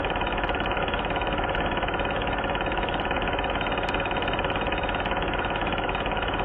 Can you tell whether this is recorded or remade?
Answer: remade